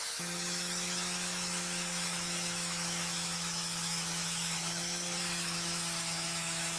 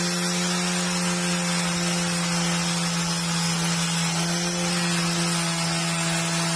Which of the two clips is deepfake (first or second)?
first